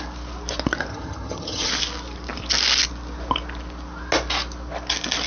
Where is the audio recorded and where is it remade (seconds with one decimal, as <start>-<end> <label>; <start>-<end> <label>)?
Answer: 0.0-0.9 recorded; 0.9-1.7 remade; 1.7-5.3 recorded